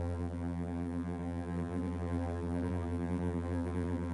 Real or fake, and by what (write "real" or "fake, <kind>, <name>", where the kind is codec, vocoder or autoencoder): fake, vocoder, BigVGAN v2